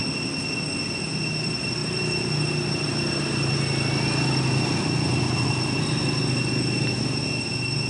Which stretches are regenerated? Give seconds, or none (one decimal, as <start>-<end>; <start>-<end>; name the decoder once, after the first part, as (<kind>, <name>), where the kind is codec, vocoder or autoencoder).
none

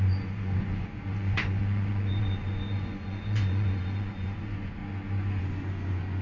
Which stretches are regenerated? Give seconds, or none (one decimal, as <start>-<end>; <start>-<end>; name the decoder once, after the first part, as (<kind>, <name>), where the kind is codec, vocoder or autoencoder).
0.0-4.8 (vocoder, Vocos); 5.4-6.2

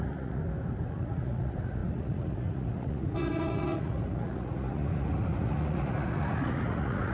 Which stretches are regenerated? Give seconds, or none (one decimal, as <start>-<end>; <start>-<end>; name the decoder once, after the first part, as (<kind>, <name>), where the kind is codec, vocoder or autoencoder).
0.0-0.4 (vocoder, Vocos); 0.9-7.1

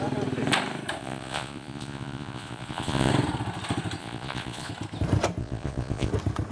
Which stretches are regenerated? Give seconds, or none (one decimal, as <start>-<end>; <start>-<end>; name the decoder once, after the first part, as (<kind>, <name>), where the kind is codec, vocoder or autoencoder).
1.0-3.1 (vocoder, Vocos); 4.0-4.7; 5.4-6.1

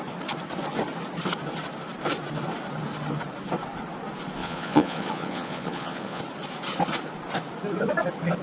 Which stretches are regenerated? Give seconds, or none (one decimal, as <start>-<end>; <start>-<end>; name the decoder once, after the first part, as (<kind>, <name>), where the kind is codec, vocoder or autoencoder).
4.4-6.2 (vocoder, Vocos)

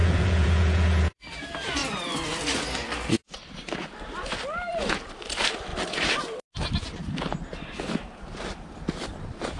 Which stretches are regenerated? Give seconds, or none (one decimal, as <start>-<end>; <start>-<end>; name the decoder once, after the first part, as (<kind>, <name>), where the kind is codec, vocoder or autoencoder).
0.0-1.4 (vocoder, Vocos)